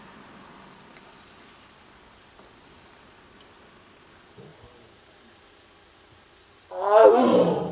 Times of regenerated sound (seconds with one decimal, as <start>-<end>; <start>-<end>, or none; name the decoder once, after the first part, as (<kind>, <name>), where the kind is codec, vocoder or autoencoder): none